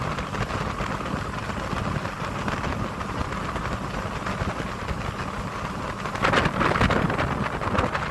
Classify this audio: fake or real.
real